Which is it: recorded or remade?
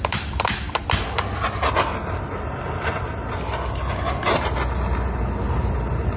recorded